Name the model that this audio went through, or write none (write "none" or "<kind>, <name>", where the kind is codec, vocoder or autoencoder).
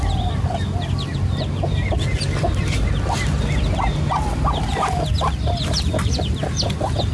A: none